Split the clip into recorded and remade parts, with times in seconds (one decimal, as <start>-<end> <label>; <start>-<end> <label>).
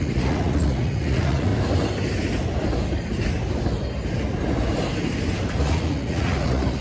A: 0.0-1.5 remade; 1.5-5.6 recorded; 5.6-6.8 remade